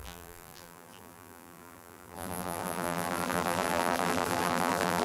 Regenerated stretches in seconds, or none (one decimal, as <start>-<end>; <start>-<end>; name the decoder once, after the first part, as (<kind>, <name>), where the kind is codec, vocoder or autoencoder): 0.0-5.0 (vocoder, BigVGAN v2)